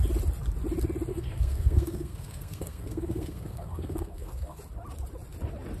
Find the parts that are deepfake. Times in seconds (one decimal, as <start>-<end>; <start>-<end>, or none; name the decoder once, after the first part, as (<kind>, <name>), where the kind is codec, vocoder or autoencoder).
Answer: 1.1-4.6 (codec, SNAC)